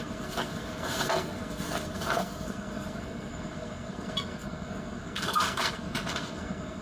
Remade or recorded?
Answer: remade